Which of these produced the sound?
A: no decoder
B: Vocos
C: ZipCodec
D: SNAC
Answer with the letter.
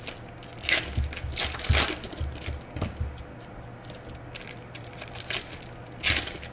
A